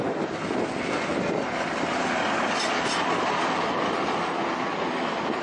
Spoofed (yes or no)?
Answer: no